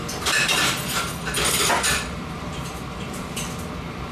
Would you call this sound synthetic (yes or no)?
yes